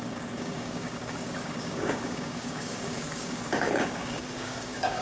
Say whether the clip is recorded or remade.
remade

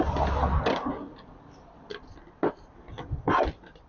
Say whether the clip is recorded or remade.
recorded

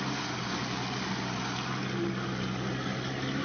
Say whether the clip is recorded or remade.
recorded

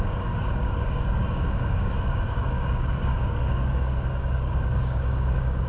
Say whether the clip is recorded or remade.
remade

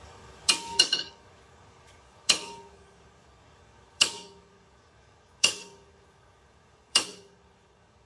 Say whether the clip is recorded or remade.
remade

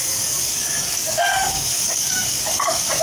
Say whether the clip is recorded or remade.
remade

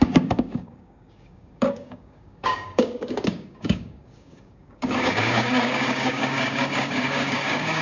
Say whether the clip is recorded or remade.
remade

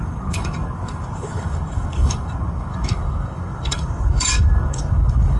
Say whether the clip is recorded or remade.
remade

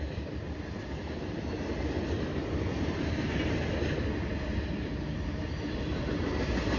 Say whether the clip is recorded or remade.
recorded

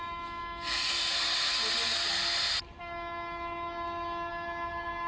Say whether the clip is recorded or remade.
recorded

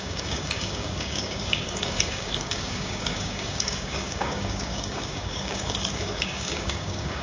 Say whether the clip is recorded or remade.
remade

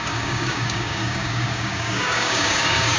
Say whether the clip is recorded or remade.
remade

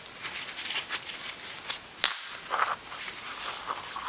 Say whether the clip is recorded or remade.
recorded